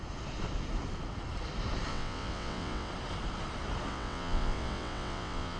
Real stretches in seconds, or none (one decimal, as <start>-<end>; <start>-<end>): 0.0-1.9; 2.9-3.9